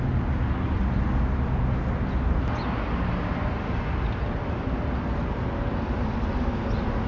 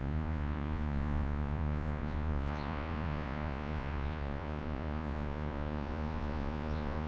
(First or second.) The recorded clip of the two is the first